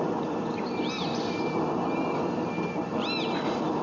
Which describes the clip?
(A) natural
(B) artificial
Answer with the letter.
B